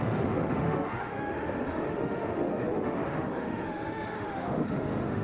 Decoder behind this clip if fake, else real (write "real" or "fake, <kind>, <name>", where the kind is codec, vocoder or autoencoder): fake, autoencoder, DAC-VAE